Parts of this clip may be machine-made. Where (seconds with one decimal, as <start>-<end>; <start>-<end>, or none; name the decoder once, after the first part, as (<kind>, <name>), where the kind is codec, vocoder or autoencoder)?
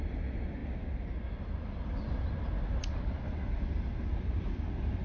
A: none